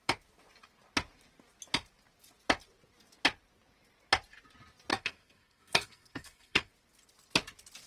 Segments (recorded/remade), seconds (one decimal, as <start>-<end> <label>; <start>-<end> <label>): 0.0-4.9 recorded; 4.9-6.7 remade; 6.7-7.9 recorded